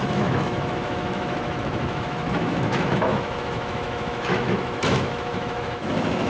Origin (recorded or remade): remade